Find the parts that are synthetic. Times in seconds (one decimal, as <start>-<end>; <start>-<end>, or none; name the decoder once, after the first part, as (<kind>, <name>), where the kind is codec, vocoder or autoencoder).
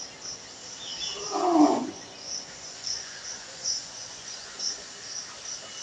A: 1.4-4.9 (vocoder, Vocos)